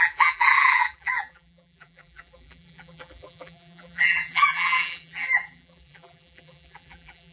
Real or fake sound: fake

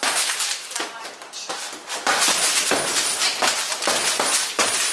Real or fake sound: real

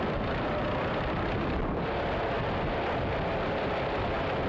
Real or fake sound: real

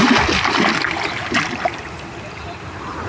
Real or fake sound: real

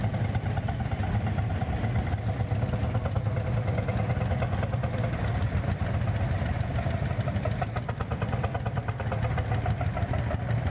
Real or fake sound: real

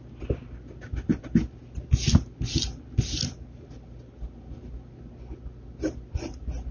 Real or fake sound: real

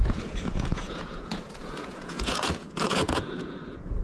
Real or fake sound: fake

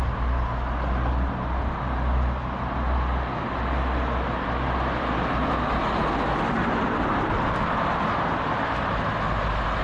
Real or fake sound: real